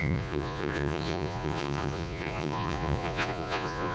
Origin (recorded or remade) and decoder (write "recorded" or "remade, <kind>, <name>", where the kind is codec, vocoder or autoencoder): remade, vocoder, Vocos